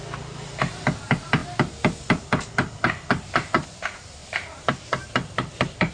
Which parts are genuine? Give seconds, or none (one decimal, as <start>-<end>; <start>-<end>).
0.0-4.2